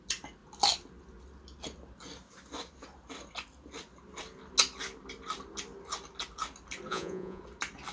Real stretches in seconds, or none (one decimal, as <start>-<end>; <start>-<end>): 0.0-6.9; 7.4-7.9

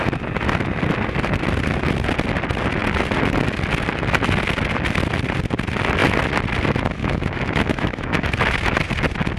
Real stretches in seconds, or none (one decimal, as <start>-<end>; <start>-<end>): 0.0-7.0; 8.4-9.4

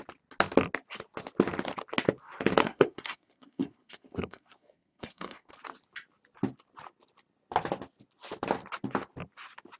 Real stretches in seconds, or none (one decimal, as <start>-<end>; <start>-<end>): 0.0-2.6; 5.5-9.8

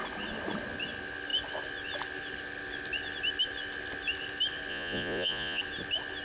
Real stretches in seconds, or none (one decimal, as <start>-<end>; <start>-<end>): 0.0-4.7; 5.6-6.2

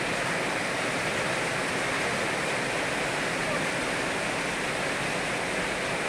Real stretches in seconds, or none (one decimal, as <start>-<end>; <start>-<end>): 0.0-6.1